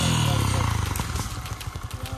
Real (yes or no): yes